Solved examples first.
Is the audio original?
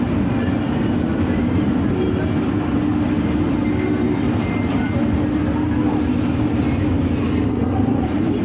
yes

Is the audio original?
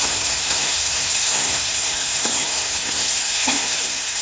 no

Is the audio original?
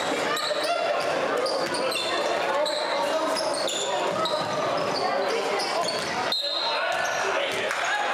yes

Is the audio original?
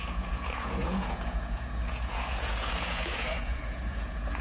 no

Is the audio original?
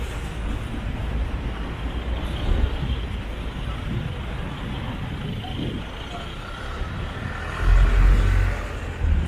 yes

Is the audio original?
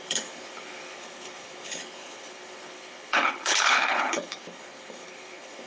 no